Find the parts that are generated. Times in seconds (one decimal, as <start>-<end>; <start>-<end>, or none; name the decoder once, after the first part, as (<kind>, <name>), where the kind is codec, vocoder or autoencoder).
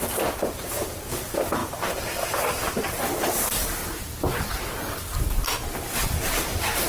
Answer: 0.0-3.8 (vocoder, BigVGAN v2); 6.2-6.9